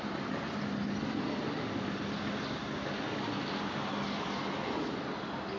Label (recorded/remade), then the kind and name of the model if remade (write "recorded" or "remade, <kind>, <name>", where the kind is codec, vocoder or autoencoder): recorded